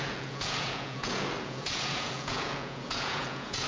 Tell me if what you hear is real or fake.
fake